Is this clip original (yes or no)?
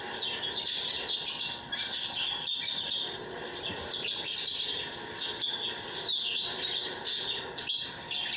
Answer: yes